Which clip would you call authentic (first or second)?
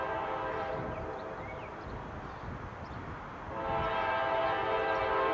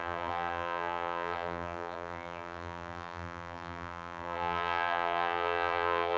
first